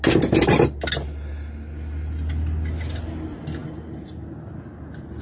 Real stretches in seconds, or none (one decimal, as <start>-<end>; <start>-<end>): 0.0-5.2